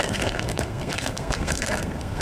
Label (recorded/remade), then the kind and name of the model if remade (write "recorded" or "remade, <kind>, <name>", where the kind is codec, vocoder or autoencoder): remade, codec, SNAC